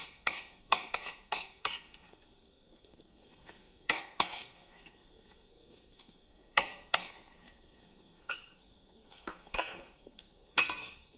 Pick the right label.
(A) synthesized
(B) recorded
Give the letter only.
A